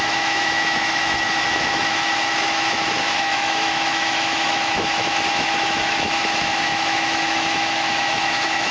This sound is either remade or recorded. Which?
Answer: remade